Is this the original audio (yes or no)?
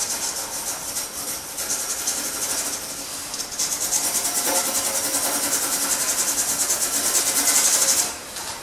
yes